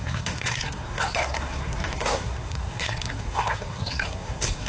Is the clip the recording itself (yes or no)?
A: no